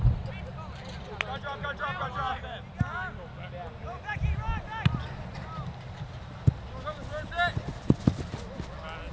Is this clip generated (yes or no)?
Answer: no